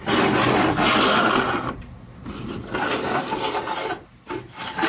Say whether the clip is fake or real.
real